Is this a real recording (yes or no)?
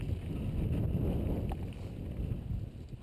yes